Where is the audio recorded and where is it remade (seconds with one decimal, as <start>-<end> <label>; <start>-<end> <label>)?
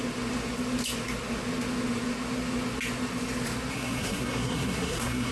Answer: 0.0-3.7 recorded; 3.7-5.3 remade